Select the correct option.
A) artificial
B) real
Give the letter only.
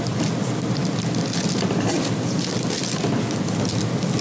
B